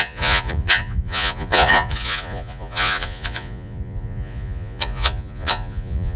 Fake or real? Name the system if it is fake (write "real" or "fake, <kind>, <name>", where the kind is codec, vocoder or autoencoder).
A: fake, vocoder, Vocos